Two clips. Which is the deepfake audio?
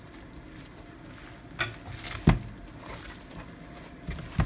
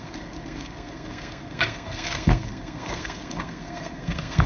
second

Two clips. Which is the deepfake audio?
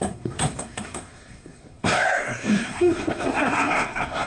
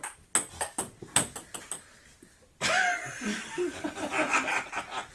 first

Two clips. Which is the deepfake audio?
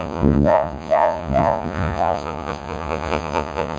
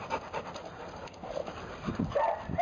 first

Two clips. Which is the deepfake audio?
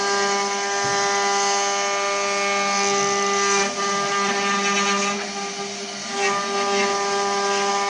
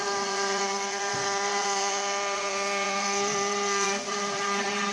second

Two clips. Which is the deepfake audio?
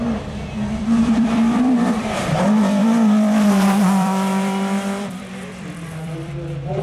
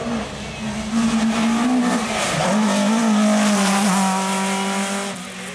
first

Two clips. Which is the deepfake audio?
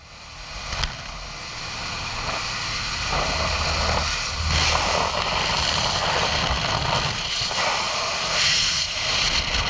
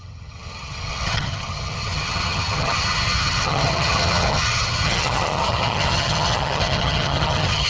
second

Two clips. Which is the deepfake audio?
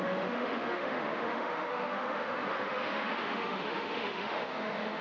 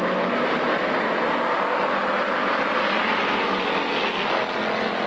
first